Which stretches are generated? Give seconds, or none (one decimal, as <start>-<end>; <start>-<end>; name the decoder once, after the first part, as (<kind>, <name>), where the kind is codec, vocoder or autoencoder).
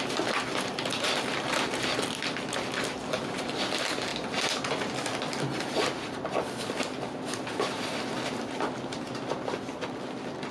none